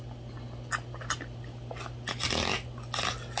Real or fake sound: real